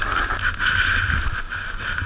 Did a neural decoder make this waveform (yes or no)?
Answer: no